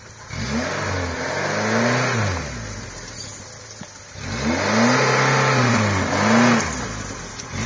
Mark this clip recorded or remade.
recorded